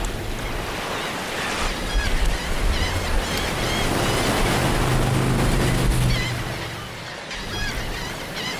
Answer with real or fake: real